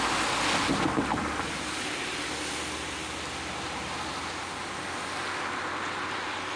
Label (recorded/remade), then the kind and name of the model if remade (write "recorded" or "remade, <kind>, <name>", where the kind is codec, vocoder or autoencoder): recorded